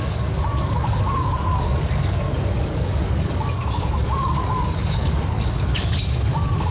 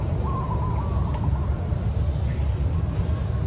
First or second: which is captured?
second